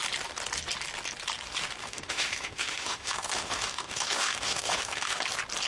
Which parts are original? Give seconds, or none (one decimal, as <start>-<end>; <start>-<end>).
0.0-1.8; 5.2-5.7